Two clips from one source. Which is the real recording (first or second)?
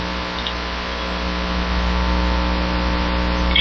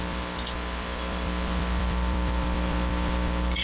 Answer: first